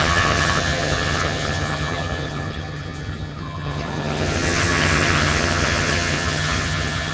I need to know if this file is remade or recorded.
remade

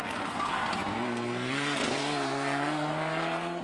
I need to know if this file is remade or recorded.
remade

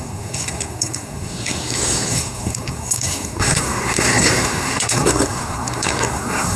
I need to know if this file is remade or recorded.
remade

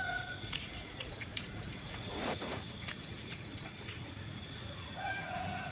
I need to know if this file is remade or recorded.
remade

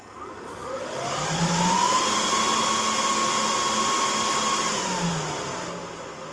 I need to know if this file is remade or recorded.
recorded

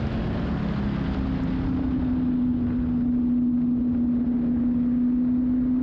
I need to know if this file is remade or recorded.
recorded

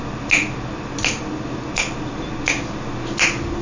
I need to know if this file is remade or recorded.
recorded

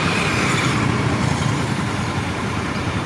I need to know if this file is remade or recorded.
remade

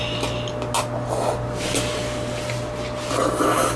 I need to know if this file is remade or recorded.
recorded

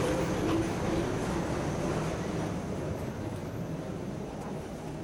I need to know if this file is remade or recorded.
recorded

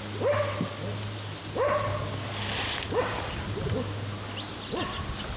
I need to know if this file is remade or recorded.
recorded